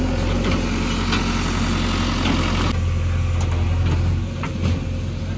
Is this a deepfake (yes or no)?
no